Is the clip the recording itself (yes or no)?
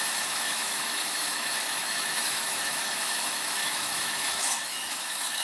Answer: no